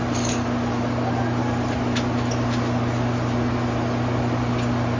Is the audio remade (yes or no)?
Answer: no